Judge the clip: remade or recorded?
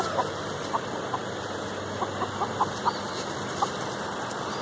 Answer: recorded